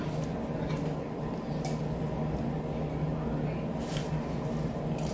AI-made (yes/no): no